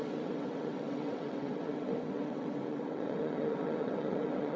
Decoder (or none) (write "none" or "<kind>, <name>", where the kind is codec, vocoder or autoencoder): vocoder, WaveNeXt